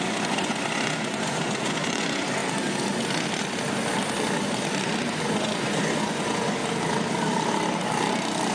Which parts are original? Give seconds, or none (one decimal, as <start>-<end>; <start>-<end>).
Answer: 2.4-5.2; 6.6-8.5